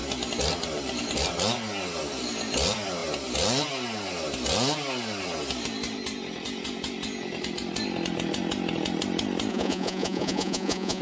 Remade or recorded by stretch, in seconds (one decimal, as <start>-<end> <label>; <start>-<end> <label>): 0.0-9.5 recorded; 9.5-11.0 remade